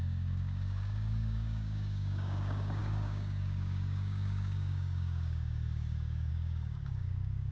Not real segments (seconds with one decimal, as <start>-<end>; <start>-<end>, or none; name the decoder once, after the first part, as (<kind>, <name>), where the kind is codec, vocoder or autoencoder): 0.0-7.5 (codec, DAC)